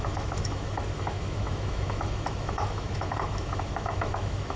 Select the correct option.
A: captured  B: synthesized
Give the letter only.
B